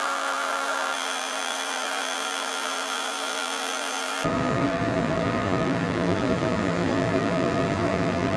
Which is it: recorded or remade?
remade